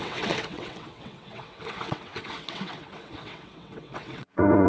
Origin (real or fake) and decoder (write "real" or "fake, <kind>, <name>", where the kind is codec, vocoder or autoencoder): fake, vocoder, WaveNeXt